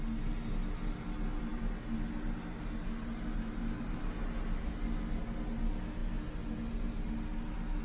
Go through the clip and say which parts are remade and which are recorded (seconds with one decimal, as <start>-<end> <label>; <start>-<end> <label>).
0.0-7.8 recorded